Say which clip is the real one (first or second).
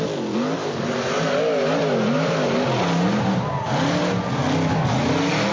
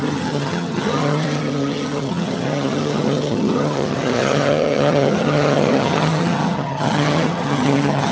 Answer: first